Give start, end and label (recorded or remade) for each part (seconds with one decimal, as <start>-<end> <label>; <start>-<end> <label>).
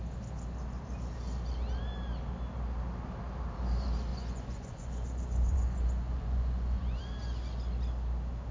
0.0-4.1 recorded; 4.1-7.0 remade; 7.0-8.5 recorded